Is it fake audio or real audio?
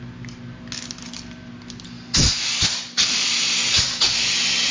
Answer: real